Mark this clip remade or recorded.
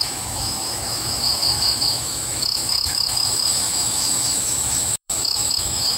remade